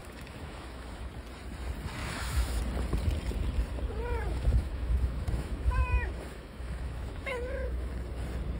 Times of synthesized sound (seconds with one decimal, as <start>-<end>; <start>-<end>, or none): 0.0-1.1; 2.0-2.6; 4.3-7.9